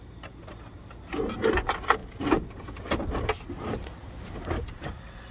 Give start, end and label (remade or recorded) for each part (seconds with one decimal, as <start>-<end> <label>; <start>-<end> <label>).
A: 0.0-5.3 recorded